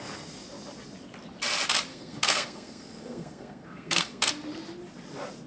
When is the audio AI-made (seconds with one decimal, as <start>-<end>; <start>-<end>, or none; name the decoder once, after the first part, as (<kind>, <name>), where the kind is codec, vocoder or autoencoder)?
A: 1.9-4.3 (codec, SNAC)